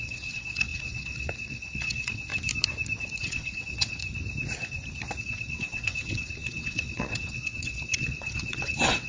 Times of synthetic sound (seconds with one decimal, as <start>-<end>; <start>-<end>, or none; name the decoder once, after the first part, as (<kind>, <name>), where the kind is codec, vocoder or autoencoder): 0.0-2.3 (vocoder, WaveNeXt); 3.2-4.0; 5.2-9.1